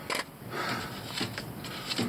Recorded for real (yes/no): yes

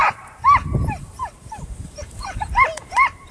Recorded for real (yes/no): no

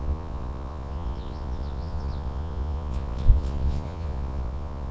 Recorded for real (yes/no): no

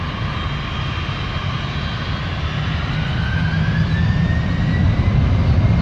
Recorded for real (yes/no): yes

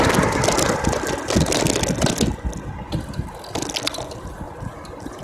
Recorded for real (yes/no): yes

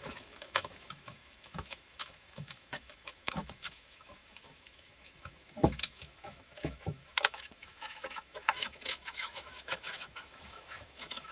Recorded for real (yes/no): no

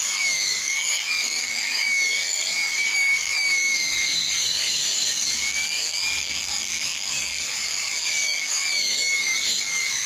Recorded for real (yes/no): no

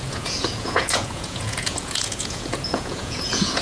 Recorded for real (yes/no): no